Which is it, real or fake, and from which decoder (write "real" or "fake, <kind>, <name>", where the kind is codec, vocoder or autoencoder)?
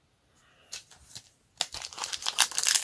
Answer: real